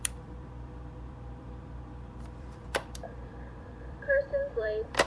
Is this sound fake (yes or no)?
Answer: yes